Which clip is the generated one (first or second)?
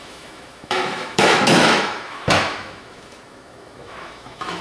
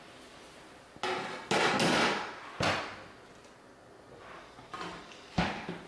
first